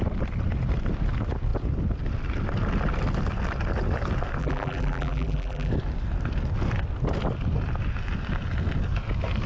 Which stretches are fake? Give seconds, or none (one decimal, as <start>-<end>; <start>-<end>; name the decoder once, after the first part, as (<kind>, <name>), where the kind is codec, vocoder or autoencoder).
4.4-5.7 (vocoder, BigVGAN v2)